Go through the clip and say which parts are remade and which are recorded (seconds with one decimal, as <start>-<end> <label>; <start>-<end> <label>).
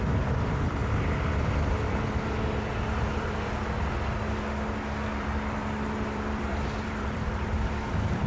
0.0-0.8 remade; 0.8-5.2 recorded; 5.2-8.3 remade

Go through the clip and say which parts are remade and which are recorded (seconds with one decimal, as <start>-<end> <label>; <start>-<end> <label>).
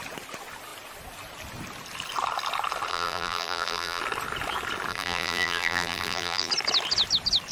0.0-2.9 recorded; 2.9-4.0 remade; 4.0-4.9 recorded; 4.9-6.5 remade; 6.5-7.5 recorded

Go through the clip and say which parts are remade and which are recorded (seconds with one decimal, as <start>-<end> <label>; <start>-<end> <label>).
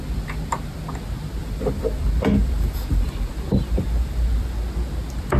0.0-1.4 recorded; 1.4-4.6 remade; 4.6-5.4 recorded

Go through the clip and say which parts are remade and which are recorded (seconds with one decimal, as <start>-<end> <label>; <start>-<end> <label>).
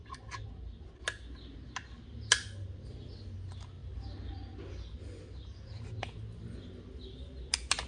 0.0-3.8 recorded; 3.8-4.3 remade; 4.3-7.9 recorded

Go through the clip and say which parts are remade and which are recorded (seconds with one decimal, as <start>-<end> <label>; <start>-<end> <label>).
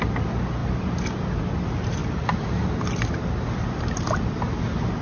0.0-0.6 recorded; 0.6-1.1 remade; 1.1-2.0 recorded; 2.0-4.6 remade; 4.6-5.0 recorded